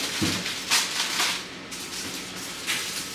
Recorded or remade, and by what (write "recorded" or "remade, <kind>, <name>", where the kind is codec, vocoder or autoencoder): recorded